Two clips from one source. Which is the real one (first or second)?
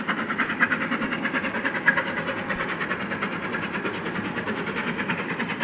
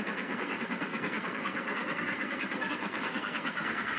first